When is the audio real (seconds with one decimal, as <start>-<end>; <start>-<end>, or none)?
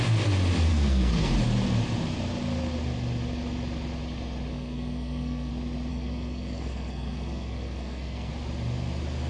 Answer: 0.0-0.7; 1.3-4.5; 5.5-5.9; 8.3-9.3